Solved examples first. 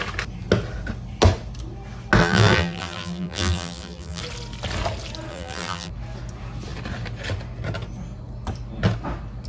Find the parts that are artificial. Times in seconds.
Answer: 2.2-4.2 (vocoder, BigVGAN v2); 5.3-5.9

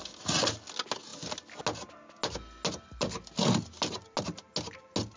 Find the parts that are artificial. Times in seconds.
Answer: none

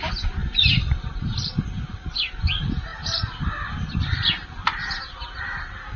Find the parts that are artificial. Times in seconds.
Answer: 2.9-5.4 (vocoder, BigVGAN v2)